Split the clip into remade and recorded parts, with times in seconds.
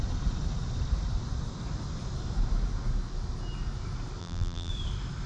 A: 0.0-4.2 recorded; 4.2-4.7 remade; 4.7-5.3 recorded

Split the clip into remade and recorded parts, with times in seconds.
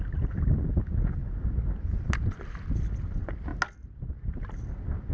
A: 0.0-5.1 recorded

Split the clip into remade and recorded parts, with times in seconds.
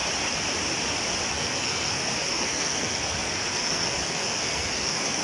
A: 0.0-1.3 recorded; 1.3-5.2 remade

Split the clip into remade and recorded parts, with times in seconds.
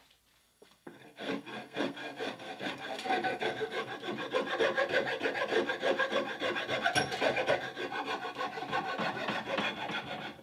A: 0.0-0.4 recorded; 0.4-3.9 remade; 3.9-10.4 recorded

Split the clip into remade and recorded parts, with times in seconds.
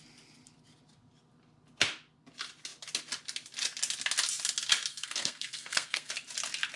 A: 0.0-4.9 recorded; 4.9-6.1 remade; 6.1-6.8 recorded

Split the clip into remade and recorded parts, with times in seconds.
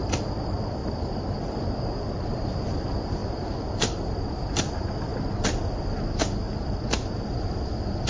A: 0.0-0.8 recorded; 0.8-2.6 remade; 2.6-3.2 recorded; 3.2-4.6 remade; 4.6-8.1 recorded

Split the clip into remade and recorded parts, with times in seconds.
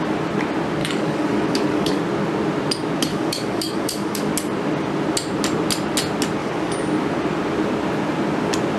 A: 0.0-0.8 recorded; 0.8-2.0 remade; 2.0-3.1 recorded; 3.1-4.3 remade; 4.3-6.4 recorded; 6.4-6.9 remade; 6.9-8.8 recorded